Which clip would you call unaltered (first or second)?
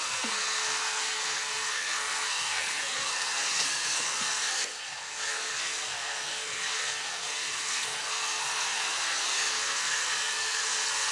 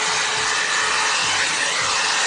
second